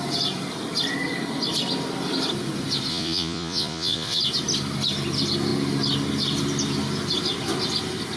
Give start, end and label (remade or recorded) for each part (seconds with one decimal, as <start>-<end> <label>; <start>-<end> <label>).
0.0-2.9 recorded; 2.9-4.2 remade; 4.2-8.2 recorded